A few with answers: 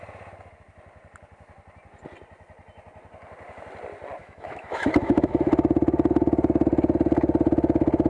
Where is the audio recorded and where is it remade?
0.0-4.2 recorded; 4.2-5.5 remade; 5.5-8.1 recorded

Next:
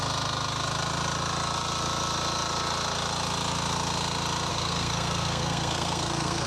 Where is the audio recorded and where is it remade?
0.0-4.5 recorded; 4.5-6.5 remade

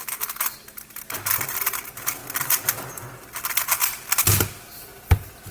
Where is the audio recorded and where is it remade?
0.0-5.5 recorded

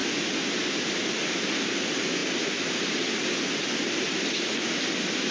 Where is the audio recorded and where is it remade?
0.0-5.3 recorded